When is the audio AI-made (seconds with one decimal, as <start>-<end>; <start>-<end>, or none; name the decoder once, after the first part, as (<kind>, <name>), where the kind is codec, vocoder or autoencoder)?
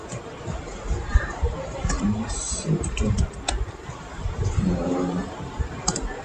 0.0-6.2 (vocoder, BigVGAN v2)